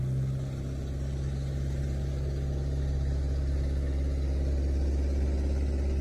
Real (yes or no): yes